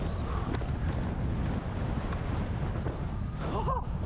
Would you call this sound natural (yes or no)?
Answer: yes